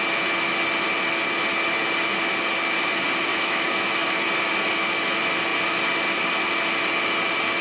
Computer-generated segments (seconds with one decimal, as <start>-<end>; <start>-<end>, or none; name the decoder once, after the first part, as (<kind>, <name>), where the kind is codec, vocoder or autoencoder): 3.3-4.2 (autoencoder, DAC-VAE)